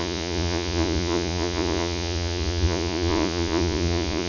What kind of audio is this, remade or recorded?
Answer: remade